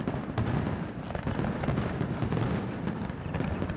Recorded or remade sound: recorded